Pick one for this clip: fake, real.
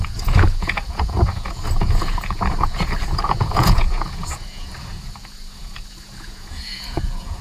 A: fake